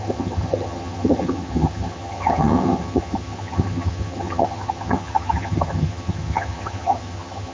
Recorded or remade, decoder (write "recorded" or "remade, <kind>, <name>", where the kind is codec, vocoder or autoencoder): remade, vocoder, HiFi-GAN